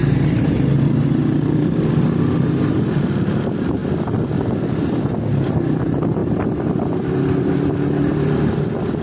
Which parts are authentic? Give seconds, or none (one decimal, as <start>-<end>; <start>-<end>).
1.9-9.0